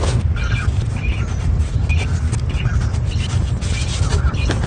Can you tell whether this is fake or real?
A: real